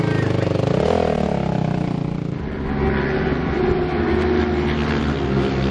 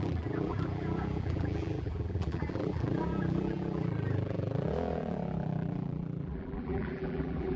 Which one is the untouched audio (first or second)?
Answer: first